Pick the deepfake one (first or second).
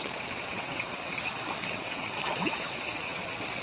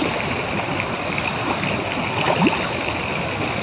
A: first